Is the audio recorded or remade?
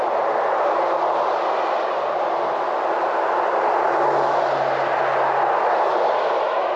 recorded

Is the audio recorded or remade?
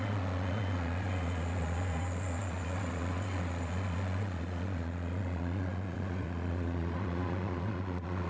remade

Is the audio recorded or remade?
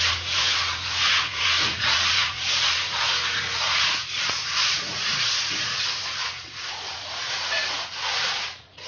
remade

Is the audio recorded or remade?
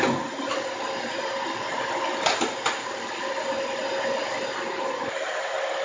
recorded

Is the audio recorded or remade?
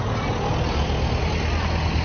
recorded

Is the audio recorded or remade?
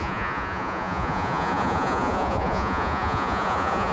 remade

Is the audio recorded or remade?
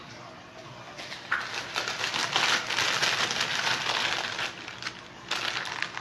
recorded